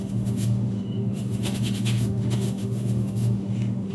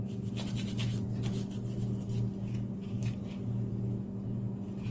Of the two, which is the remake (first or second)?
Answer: first